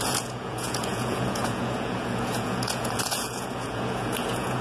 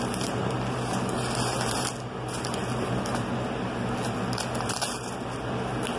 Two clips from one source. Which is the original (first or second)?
second